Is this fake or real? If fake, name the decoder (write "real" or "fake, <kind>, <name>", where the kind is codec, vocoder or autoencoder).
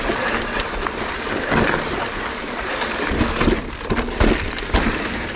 real